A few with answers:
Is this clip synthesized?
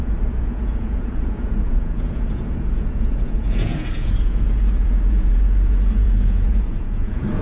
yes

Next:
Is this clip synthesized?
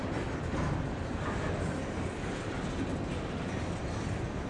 no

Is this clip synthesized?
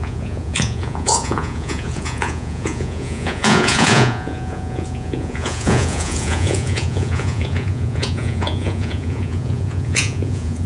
yes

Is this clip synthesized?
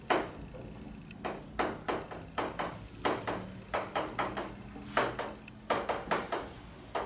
no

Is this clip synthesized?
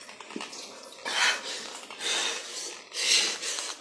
no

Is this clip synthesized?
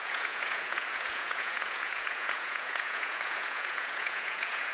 yes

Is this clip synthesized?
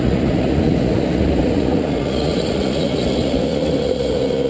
yes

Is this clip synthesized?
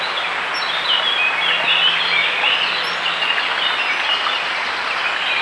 no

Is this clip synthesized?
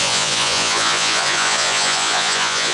yes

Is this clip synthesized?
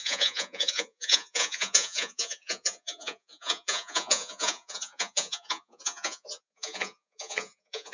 yes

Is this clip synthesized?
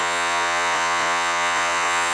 yes